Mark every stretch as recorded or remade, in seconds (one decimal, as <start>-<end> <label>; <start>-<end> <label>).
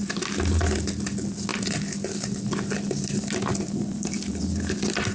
0.0-5.1 recorded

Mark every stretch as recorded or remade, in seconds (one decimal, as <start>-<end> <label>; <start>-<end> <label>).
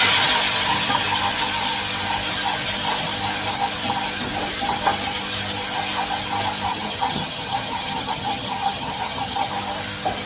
0.0-6.7 recorded; 6.7-9.5 remade; 9.5-10.3 recorded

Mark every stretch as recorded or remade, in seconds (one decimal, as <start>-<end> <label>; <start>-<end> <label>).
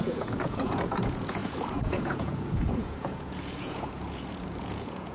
0.0-5.1 remade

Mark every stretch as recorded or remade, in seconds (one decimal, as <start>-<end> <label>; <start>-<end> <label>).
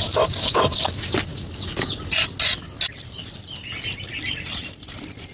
0.0-5.3 recorded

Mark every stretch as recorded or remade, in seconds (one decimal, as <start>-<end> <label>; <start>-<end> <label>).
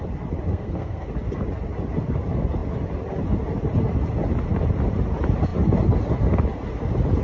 0.0-0.5 recorded; 0.5-1.1 remade; 1.1-7.2 recorded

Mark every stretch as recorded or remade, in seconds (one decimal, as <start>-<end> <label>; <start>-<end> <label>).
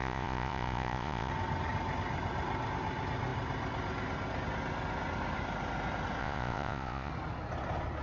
0.0-1.3 remade; 1.3-6.2 recorded; 6.2-7.1 remade; 7.1-8.0 recorded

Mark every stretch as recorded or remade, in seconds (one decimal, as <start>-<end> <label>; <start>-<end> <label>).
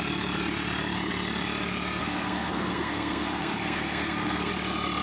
0.0-2.0 recorded; 2.0-4.5 remade; 4.5-5.0 recorded